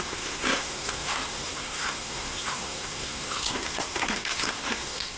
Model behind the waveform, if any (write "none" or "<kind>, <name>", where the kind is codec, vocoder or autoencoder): codec, SNAC